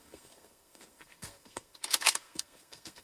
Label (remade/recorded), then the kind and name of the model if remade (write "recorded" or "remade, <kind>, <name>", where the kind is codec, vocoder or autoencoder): remade, codec, SNAC